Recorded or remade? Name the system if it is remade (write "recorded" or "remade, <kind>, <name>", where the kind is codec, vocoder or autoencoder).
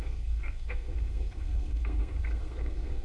remade, codec, SNAC